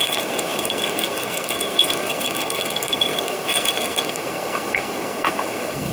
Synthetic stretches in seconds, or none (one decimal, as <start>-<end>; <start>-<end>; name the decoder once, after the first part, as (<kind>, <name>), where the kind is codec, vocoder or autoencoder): 0.0-5.9 (codec, SNAC)